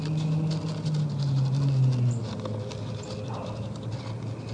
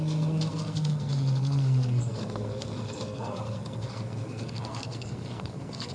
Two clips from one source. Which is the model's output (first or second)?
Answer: second